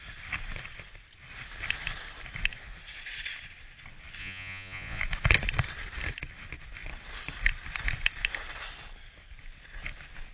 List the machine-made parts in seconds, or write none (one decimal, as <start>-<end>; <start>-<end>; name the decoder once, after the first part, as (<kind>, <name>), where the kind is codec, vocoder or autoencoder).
4.2-5.0 (vocoder, Vocos)